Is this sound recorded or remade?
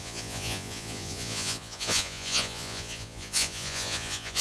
remade